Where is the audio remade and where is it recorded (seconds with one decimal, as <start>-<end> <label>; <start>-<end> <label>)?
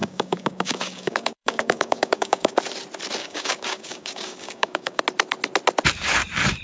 0.0-2.6 remade; 2.6-3.2 recorded; 3.2-5.0 remade; 5.0-6.6 recorded